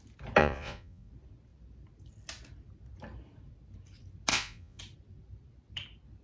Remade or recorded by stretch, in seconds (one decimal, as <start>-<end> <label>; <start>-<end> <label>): 0.0-0.4 recorded; 0.4-1.1 remade; 1.1-4.3 recorded; 4.3-4.8 remade; 4.8-6.2 recorded